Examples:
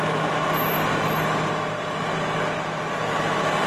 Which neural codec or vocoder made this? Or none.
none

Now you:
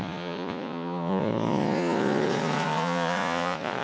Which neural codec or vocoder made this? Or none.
vocoder, Vocos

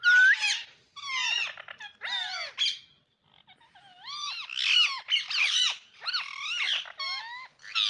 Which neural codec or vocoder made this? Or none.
none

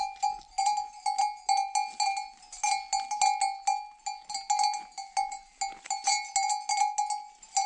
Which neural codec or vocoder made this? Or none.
none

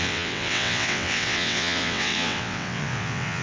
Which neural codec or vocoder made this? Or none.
vocoder, WaveNeXt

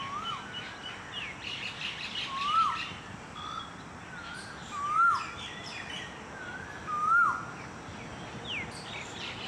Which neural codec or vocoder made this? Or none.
none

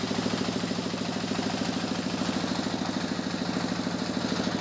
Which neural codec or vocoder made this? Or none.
none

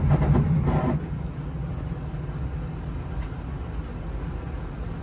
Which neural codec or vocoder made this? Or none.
none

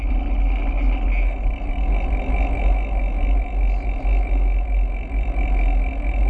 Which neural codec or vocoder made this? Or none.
none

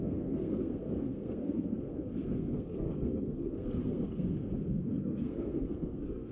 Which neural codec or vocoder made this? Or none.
codec, SNAC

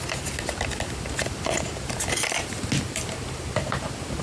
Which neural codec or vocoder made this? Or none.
none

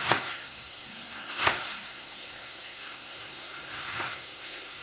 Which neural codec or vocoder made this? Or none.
codec, SNAC